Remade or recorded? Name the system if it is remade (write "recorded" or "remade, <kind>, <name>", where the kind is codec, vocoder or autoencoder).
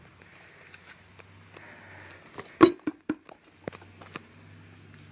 recorded